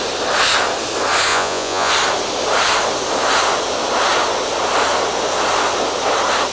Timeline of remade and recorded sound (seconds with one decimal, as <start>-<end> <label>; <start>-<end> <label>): 0.0-1.3 recorded; 1.3-1.9 remade; 1.9-6.5 recorded

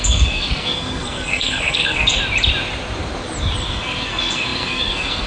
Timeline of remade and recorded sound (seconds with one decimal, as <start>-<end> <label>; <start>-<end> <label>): 0.0-2.2 remade; 2.2-3.7 recorded; 3.7-5.3 remade

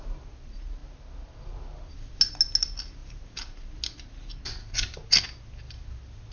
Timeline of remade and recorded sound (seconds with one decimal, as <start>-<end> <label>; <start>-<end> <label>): 0.0-3.0 recorded; 3.0-3.7 remade; 3.7-6.3 recorded

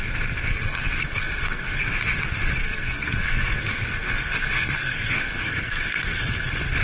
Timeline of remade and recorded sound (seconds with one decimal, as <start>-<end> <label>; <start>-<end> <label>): 0.0-0.5 recorded; 0.5-1.9 remade; 1.9-2.6 recorded; 2.6-6.2 remade; 6.2-6.8 recorded

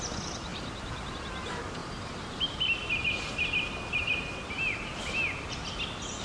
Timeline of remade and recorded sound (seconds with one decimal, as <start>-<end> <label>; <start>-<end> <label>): 0.0-6.2 recorded

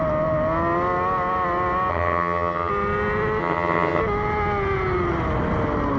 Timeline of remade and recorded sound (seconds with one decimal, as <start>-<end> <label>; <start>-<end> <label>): 0.0-1.9 recorded; 1.9-2.7 remade; 2.7-3.4 recorded; 3.4-4.0 remade; 4.0-6.0 recorded

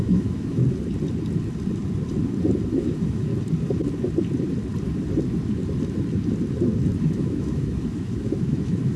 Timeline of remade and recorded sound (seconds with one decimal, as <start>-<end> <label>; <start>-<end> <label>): 0.0-0.6 remade; 0.6-2.7 recorded; 2.7-3.3 remade; 3.3-7.0 recorded; 7.0-9.0 remade

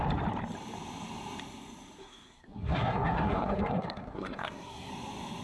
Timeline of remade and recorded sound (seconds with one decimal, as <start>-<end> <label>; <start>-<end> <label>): 0.0-2.0 recorded; 2.0-4.9 remade; 4.9-5.4 recorded